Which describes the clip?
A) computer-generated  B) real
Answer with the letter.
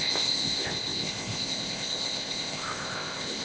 A